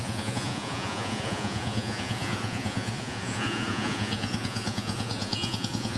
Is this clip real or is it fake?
fake